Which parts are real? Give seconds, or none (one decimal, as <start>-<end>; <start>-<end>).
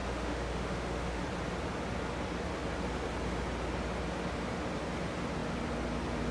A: 1.2-6.3